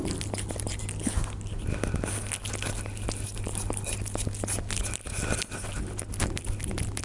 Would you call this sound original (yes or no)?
yes